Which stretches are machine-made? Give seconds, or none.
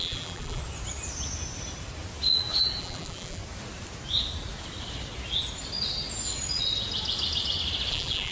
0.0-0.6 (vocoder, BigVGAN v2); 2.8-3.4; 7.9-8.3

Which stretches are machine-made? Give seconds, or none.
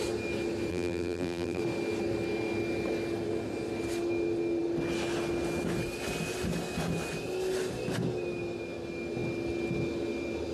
0.7-1.6 (vocoder, BigVGAN v2)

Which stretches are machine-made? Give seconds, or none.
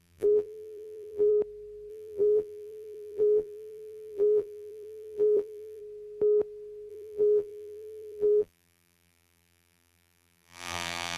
0.0-1.3 (vocoder, BigVGAN v2); 1.9-5.8; 6.9-11.2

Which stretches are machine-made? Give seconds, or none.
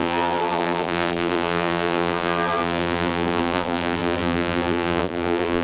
0.0-5.6 (vocoder, BigVGAN v2)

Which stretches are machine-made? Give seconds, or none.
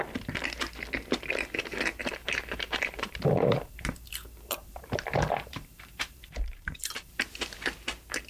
2.2-7.2 (vocoder, BigVGAN v2)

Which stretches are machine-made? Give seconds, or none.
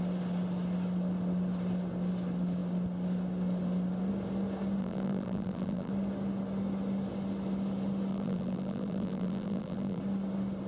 4.8-5.9 (vocoder, BigVGAN v2); 8.1-10.0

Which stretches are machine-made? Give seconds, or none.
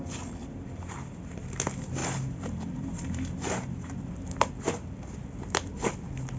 0.4-1.5 (vocoder, BigVGAN v2); 2.0-4.1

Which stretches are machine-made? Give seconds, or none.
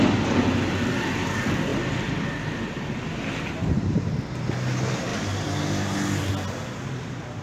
none